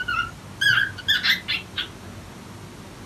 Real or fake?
real